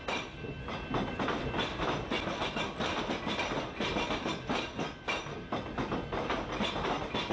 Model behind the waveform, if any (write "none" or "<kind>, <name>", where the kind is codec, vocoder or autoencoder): none